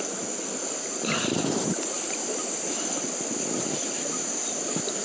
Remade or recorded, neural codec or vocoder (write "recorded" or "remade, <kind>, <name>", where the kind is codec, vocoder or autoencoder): recorded